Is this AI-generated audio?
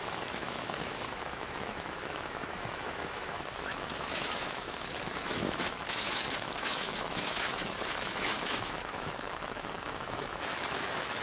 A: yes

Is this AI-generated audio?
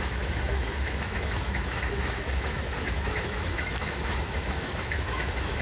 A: yes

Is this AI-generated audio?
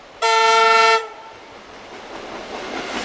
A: no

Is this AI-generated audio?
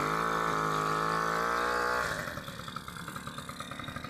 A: no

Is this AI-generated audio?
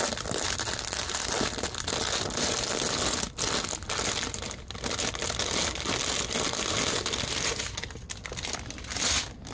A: no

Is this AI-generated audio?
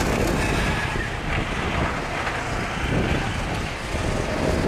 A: no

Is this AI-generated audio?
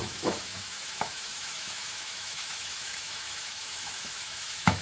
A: yes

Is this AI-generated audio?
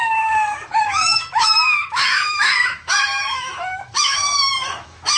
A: yes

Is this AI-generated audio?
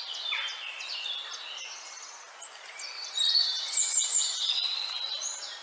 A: no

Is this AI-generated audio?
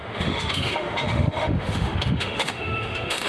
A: yes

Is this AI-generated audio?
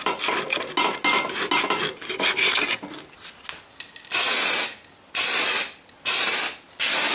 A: no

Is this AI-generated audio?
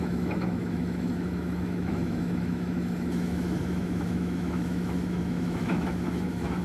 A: yes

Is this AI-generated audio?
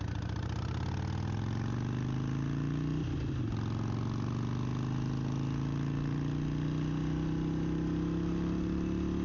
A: no